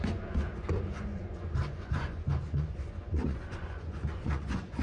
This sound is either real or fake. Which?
fake